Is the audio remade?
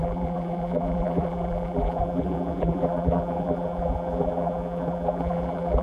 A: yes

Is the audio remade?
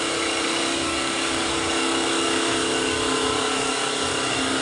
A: yes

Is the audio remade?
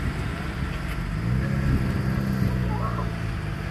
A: no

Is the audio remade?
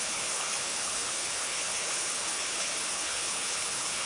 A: yes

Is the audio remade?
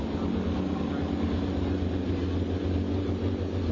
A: no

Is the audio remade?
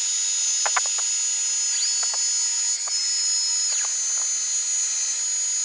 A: no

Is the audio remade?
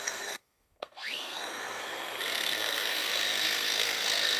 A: yes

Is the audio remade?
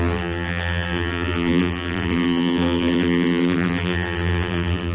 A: yes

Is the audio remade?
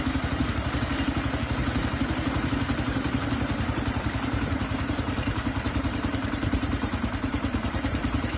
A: yes